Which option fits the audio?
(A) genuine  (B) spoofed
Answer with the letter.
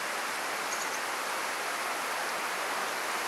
A